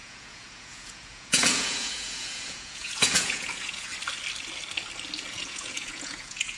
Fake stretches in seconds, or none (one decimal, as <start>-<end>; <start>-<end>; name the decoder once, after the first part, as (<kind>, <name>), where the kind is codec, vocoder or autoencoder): 0.0-3.9 (vocoder, Vocos); 5.3-6.6